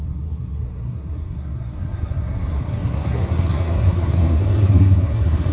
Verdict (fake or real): fake